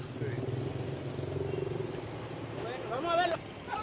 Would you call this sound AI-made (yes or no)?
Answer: no